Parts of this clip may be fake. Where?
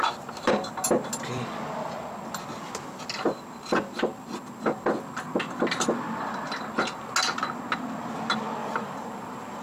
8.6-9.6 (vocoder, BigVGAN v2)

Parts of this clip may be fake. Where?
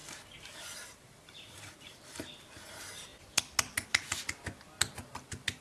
0.0-1.9 (vocoder, BigVGAN v2)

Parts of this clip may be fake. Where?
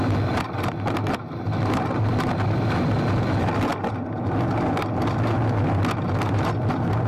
none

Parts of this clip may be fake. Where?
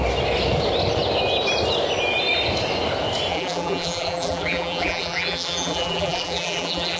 3.3-7.0 (vocoder, BigVGAN v2)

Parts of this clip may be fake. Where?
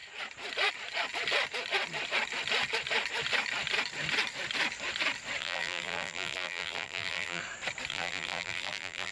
5.4-7.4 (vocoder, BigVGAN v2); 7.9-9.1